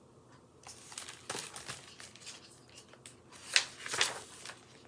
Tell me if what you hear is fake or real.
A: real